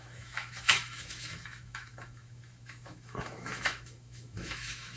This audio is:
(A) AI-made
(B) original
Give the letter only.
A